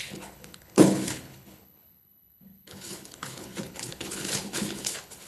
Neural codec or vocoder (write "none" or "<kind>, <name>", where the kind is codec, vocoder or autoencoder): codec, HILCodec